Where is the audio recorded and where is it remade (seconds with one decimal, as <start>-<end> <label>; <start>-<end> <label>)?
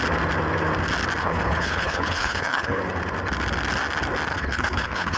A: 0.0-1.2 recorded; 1.2-2.8 remade; 2.8-4.3 recorded; 4.3-5.2 remade